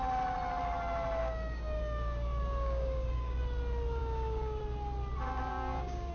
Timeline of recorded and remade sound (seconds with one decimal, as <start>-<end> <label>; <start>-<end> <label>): 0.0-1.2 recorded; 1.2-3.4 remade; 3.4-4.0 recorded; 4.0-4.6 remade; 4.6-5.5 recorded; 5.5-6.1 remade